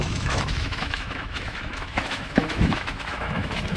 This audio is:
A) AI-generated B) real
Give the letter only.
A